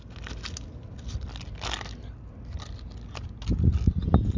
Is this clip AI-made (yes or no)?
no